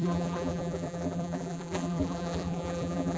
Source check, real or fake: fake